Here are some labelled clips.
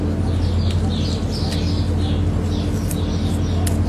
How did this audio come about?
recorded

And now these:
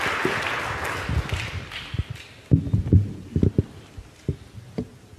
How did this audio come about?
recorded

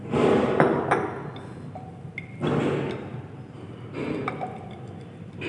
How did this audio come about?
recorded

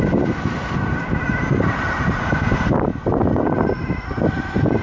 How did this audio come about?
recorded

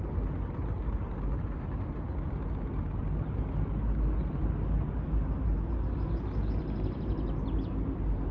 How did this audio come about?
recorded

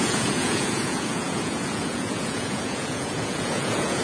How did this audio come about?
remade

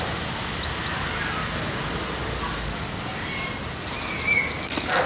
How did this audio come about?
recorded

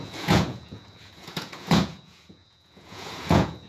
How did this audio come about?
remade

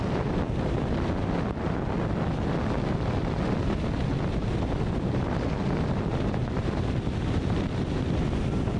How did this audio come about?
recorded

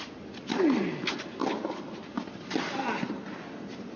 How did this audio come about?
recorded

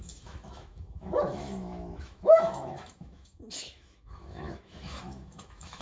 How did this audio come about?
remade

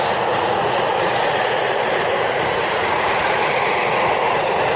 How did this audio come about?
remade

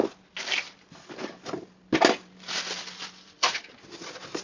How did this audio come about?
recorded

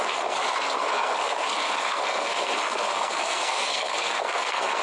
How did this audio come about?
remade